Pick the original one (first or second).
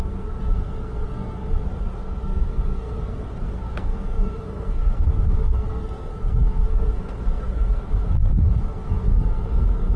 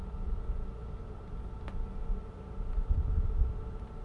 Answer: second